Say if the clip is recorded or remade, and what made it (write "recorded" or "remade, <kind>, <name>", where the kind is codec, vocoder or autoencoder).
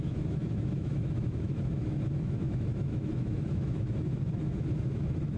remade, autoencoder, DAC-VAE